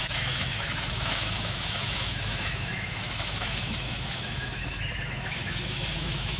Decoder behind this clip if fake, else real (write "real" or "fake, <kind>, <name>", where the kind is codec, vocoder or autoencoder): fake, autoencoder, DAC-VAE